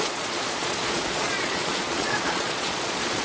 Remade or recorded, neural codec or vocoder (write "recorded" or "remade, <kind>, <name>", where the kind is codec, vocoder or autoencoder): remade, vocoder, Vocos